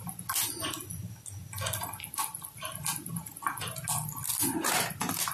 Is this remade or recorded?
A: recorded